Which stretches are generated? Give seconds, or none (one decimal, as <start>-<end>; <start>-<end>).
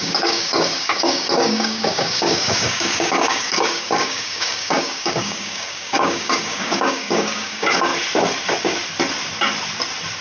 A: 0.0-7.9